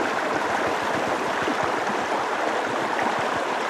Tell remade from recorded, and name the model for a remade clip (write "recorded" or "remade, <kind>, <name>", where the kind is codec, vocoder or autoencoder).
recorded